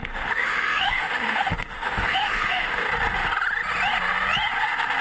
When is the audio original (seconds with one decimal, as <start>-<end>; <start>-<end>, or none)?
2.9-5.0